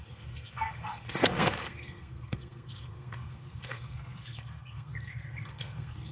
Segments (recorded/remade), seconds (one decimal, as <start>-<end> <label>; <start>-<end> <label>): 0.0-6.1 remade